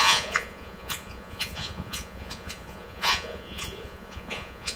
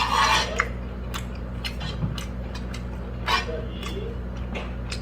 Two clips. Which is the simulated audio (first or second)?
first